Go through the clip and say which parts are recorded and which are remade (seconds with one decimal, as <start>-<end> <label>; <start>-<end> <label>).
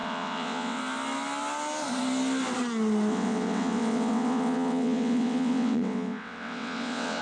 0.0-0.8 remade; 0.8-3.1 recorded; 3.1-7.2 remade